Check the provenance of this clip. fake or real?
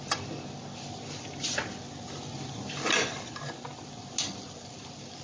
real